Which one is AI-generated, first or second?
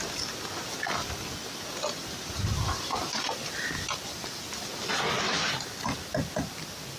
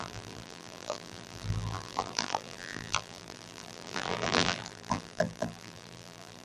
second